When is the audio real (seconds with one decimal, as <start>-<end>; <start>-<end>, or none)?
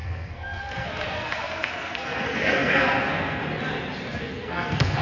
3.4-4.2